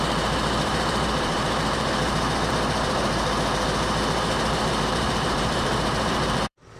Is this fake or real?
fake